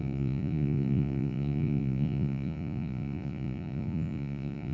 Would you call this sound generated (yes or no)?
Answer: yes